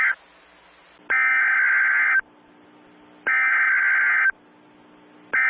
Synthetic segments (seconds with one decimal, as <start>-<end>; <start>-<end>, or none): none